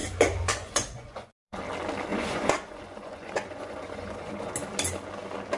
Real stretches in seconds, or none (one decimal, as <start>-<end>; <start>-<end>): 1.6-2.1; 4.5-5.6